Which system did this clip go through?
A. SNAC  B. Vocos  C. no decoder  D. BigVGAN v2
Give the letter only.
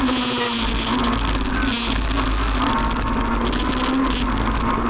C